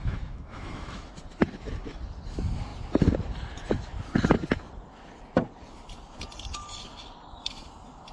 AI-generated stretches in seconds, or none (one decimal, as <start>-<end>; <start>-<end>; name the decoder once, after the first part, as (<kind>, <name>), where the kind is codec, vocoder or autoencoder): 0.0-1.1 (autoencoder, DAC-VAE)